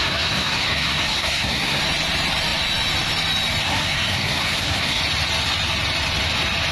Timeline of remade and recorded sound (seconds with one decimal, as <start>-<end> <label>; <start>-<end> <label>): 0.0-1.8 remade; 1.8-3.6 recorded; 3.6-5.0 remade; 5.0-6.7 recorded